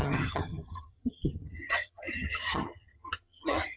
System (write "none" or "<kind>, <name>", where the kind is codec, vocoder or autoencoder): vocoder, HiFi-GAN